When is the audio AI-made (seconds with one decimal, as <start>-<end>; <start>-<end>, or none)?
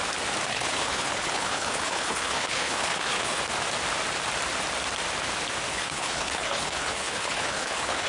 0.5-3.4; 5.7-8.1